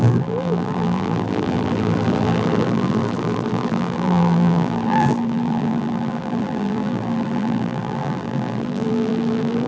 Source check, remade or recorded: remade